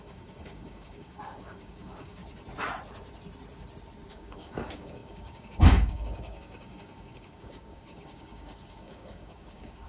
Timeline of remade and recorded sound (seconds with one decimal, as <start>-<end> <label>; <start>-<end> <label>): 0.0-2.2 remade; 2.2-4.1 recorded; 4.1-9.9 remade